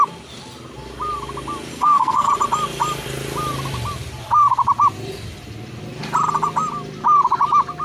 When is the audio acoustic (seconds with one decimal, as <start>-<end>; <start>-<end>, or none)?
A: 0.0-1.7; 2.3-7.8